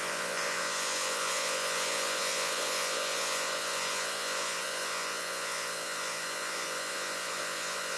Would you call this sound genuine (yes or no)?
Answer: no